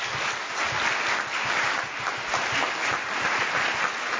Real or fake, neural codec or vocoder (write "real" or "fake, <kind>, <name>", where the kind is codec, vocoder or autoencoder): real